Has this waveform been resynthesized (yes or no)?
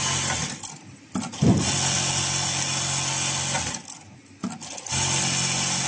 no